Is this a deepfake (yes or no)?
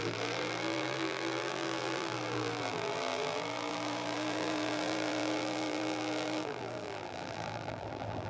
yes